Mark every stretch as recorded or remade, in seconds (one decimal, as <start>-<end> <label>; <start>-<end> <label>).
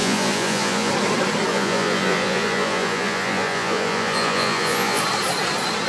0.0-0.9 remade; 0.9-1.5 recorded; 1.5-5.0 remade; 5.0-5.9 recorded